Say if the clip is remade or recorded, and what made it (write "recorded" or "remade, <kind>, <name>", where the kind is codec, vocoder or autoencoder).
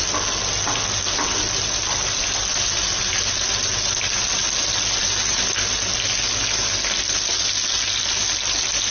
recorded